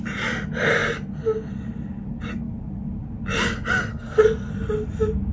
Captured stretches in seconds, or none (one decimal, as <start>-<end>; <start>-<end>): 0.0-3.9; 4.5-5.3